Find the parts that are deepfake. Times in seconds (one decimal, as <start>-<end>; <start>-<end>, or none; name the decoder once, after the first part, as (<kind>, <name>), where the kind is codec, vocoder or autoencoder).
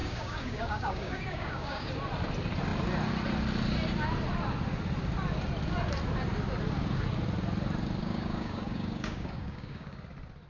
0.0-1.9 (codec, DAC); 8.0-10.0